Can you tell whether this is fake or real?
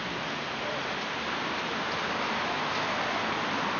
real